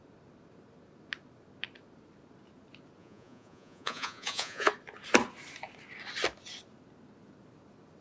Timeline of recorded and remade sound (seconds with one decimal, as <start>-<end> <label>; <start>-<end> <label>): 0.0-3.0 recorded; 3.0-4.7 remade; 4.7-8.0 recorded